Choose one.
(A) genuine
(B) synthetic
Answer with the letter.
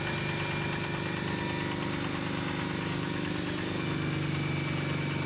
A